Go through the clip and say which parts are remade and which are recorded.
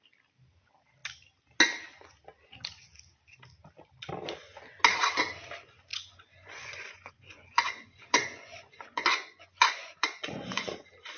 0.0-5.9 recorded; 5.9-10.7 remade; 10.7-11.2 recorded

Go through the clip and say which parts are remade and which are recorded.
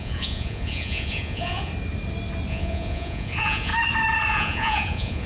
0.0-1.7 remade; 1.7-2.5 recorded; 2.5-3.7 remade; 3.7-4.3 recorded; 4.3-5.3 remade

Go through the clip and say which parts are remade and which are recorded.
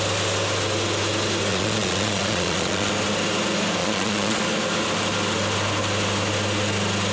0.0-1.5 recorded; 1.5-2.9 remade; 2.9-3.8 recorded; 3.8-4.4 remade; 4.4-7.1 recorded